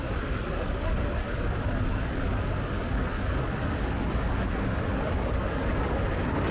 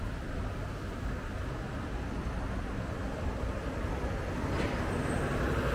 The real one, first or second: second